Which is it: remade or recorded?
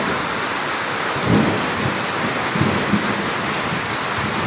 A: recorded